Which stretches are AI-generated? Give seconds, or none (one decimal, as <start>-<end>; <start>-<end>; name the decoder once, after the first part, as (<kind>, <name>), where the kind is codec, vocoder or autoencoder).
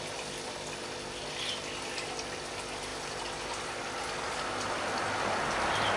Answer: none